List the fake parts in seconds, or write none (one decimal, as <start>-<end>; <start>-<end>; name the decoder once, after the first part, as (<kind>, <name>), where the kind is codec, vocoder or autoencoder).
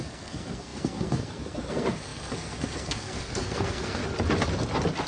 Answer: 0.0-4.0 (codec, SNAC)